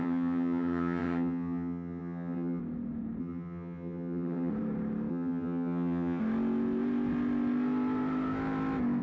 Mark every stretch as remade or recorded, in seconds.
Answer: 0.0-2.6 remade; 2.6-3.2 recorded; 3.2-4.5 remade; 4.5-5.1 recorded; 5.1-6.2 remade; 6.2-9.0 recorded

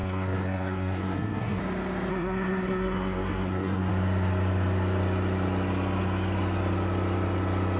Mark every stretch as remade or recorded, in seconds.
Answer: 0.0-1.6 remade; 1.6-2.1 recorded; 2.1-3.9 remade; 3.9-7.8 recorded

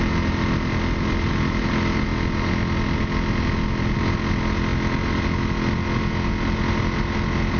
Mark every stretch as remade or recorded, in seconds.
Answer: 0.0-7.6 recorded

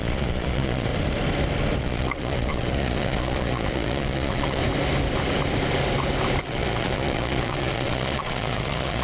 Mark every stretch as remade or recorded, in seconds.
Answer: 0.0-0.9 remade; 0.9-1.8 recorded; 1.8-4.6 remade; 4.6-6.4 recorded; 6.4-9.0 remade

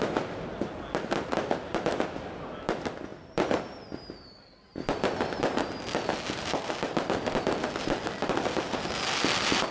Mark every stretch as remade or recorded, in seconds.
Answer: 0.0-9.7 recorded

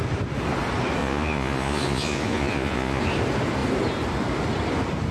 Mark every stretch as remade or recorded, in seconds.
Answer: 0.0-1.0 recorded; 1.0-3.0 remade; 3.0-5.1 recorded

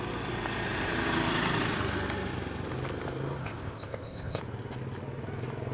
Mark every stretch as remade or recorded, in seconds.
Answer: 0.0-3.4 recorded; 3.4-4.4 remade; 4.4-5.7 recorded